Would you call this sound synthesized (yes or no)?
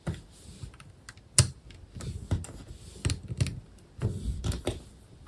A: no